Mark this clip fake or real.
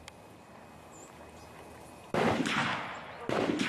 real